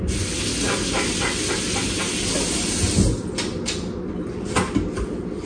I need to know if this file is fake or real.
real